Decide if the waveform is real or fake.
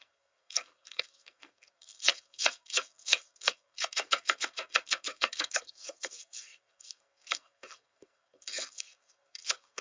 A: fake